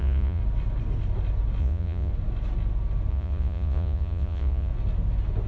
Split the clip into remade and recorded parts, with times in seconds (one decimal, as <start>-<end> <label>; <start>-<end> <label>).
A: 0.0-0.4 remade; 0.4-1.6 recorded; 1.6-2.1 remade; 2.1-3.1 recorded; 3.1-4.7 remade; 4.7-5.5 recorded